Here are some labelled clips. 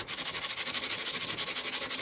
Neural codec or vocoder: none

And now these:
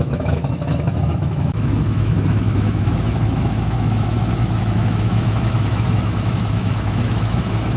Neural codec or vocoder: autoencoder, DAC-VAE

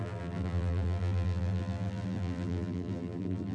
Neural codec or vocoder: vocoder, BigVGAN v2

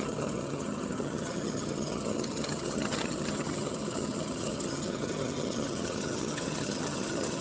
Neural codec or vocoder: vocoder, HiFi-GAN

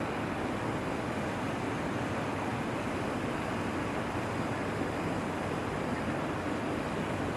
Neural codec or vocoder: none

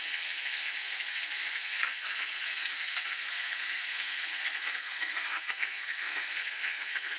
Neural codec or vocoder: codec, SNAC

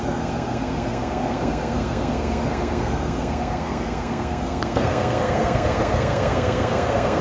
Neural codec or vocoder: codec, SNAC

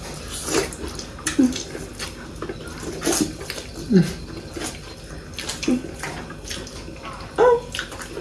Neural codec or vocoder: none